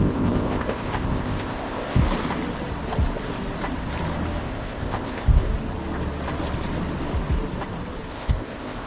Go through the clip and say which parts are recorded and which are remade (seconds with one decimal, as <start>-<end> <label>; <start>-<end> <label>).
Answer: 0.0-2.0 remade; 2.0-4.4 recorded; 4.4-5.5 remade; 5.5-8.1 recorded; 8.1-8.9 remade